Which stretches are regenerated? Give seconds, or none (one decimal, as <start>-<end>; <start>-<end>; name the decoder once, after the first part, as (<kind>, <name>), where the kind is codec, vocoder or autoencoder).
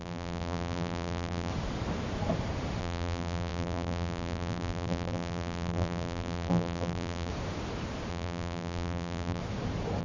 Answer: 0.0-1.5 (vocoder, BigVGAN v2); 2.8-7.3; 8.1-9.4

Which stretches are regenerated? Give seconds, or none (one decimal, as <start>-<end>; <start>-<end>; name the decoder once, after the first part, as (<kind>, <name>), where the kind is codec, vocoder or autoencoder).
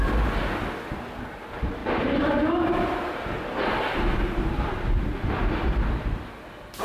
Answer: 1.8-4.7 (vocoder, BigVGAN v2)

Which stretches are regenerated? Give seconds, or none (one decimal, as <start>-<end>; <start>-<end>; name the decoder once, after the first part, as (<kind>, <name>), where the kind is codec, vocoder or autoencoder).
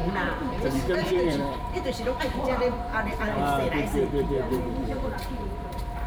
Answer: 0.0-2.4 (vocoder, BigVGAN v2)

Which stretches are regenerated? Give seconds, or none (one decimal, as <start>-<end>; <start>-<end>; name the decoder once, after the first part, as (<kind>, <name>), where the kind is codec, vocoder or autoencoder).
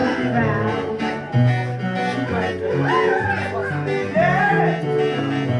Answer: none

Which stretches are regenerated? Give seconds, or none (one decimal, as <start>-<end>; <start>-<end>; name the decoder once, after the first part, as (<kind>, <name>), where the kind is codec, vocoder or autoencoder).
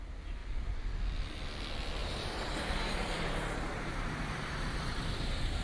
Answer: 2.0-5.6 (vocoder, BigVGAN v2)